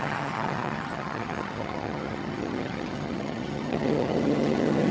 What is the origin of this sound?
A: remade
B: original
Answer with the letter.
A